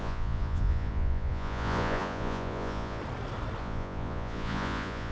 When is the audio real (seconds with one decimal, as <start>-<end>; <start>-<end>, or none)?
3.0-3.6